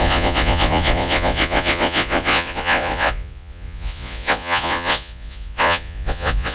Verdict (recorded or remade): remade